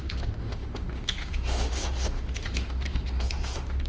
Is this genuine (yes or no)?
no